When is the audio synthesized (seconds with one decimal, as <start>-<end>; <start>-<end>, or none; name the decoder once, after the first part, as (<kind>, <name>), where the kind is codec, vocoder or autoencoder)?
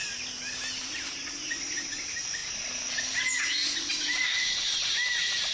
0.8-2.4 (vocoder, BigVGAN v2); 4.0-5.5